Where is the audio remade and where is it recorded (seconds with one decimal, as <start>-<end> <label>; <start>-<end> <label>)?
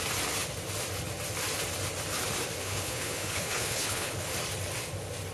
0.0-2.6 recorded; 2.6-4.3 remade; 4.3-5.3 recorded